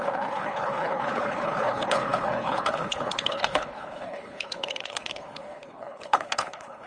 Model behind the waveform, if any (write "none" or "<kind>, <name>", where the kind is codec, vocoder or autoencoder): codec, HILCodec